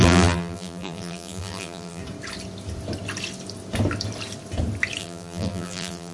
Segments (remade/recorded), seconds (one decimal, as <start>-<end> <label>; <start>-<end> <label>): 0.0-2.0 remade; 2.0-5.0 recorded; 5.0-6.1 remade